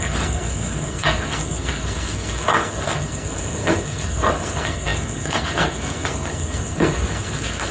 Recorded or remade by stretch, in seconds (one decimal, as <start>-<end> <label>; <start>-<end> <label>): 0.0-7.7 remade